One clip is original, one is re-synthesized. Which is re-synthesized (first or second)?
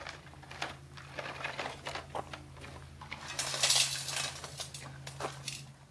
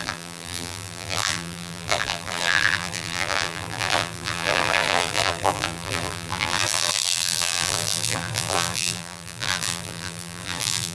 second